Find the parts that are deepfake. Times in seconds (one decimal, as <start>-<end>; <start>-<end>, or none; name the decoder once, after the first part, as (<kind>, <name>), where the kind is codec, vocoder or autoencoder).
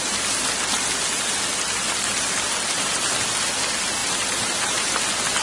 4.0-5.0 (vocoder, BigVGAN v2)